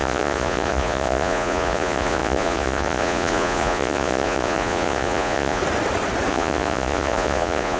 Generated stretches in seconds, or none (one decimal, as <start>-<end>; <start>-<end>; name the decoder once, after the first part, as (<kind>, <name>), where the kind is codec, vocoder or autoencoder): 0.0-5.6 (vocoder, Vocos); 6.3-7.8